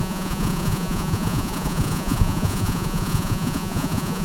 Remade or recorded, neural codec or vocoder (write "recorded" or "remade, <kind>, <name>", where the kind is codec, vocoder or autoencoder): remade, vocoder, Vocos